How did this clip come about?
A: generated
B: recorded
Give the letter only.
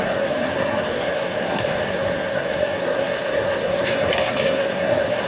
A